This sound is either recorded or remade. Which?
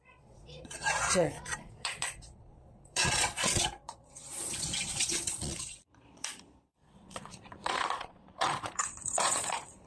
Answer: remade